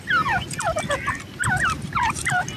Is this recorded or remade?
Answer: recorded